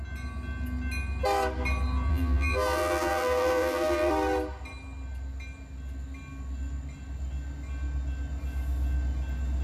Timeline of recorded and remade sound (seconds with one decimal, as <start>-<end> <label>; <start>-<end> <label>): 0.0-2.1 recorded; 2.1-4.1 remade; 4.1-9.6 recorded